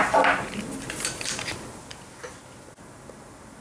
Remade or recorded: recorded